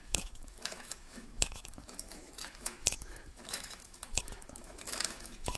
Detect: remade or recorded remade